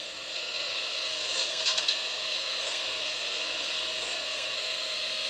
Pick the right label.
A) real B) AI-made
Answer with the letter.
B